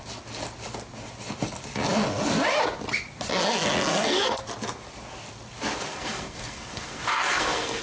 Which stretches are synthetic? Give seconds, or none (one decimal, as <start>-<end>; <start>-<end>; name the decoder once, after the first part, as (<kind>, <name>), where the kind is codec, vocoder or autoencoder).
3.9-4.4 (codec, SNAC); 5.9-7.8